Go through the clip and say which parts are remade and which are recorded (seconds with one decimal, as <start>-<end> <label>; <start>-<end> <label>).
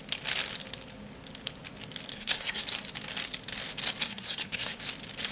0.0-2.1 recorded; 2.1-2.6 remade; 2.6-4.0 recorded; 4.0-4.8 remade; 4.8-5.3 recorded